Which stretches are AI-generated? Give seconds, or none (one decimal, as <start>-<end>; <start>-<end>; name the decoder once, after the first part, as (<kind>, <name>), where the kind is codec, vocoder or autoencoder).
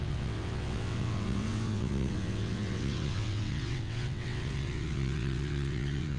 0.0-6.2 (vocoder, WaveNeXt)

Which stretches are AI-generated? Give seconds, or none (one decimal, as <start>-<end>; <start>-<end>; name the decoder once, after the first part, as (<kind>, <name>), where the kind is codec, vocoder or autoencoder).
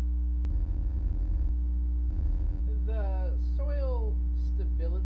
0.5-1.5 (vocoder, BigVGAN v2); 2.1-2.6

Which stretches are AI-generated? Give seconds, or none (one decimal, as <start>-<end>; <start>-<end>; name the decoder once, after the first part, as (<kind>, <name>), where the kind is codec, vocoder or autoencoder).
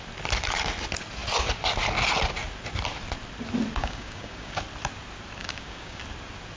3.8-4.6 (codec, DAC); 5.4-6.0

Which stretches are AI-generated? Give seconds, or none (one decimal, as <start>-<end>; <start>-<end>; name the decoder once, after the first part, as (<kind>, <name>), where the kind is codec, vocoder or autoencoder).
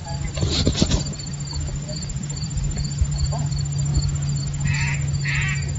0.0-0.5 (vocoder, BigVGAN v2); 1.7-3.5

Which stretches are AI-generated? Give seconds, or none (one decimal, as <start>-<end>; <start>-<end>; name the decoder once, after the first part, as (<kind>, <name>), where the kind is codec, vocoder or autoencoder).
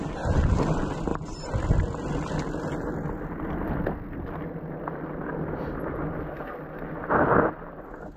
none